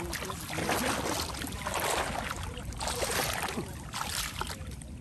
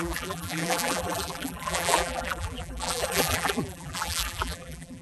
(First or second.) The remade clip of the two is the second